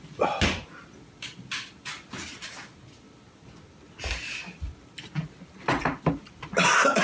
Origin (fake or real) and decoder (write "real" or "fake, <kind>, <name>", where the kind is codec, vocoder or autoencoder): real